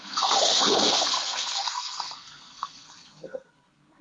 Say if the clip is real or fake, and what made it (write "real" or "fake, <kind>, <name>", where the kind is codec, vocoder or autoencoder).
fake, codec, SNAC